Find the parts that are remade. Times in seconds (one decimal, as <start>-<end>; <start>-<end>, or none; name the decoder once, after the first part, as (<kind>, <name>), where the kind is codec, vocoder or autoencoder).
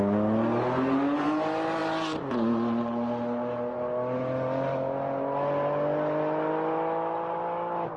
none